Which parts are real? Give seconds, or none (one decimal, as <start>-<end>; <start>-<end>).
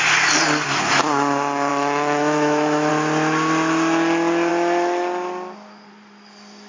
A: 0.0-1.7; 2.9-6.7